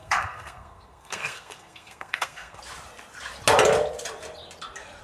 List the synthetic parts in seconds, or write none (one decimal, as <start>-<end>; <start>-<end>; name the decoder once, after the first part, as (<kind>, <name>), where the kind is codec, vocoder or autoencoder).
0.0-2.6 (codec, SNAC)